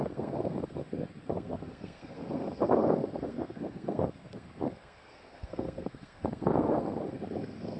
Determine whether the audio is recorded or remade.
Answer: remade